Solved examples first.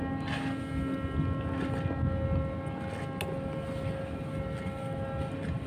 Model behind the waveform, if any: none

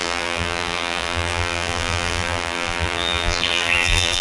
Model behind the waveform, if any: vocoder, BigVGAN v2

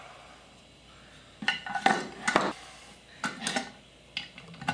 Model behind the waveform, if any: none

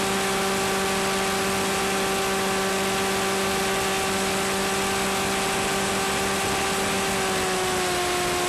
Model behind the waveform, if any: none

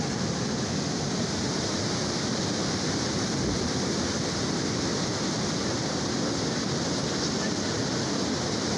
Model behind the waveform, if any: none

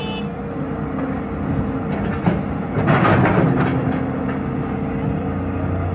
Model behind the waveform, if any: none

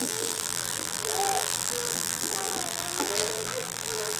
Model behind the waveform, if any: vocoder, BigVGAN v2